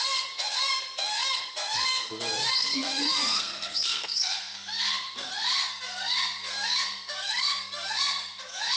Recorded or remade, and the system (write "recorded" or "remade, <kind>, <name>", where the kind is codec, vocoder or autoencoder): remade, codec, SNAC